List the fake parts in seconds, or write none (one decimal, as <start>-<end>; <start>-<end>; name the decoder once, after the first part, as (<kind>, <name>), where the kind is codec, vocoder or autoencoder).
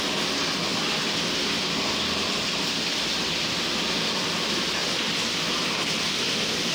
0.7-1.9 (vocoder, BigVGAN v2); 4.8-6.7